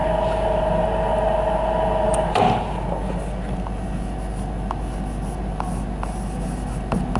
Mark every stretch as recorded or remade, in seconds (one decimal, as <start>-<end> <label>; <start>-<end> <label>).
0.0-7.2 recorded